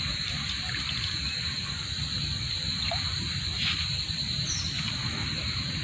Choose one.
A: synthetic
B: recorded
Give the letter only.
B